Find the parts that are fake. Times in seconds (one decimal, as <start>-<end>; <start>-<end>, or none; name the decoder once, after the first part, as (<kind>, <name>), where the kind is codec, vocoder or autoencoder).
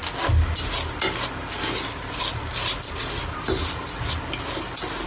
none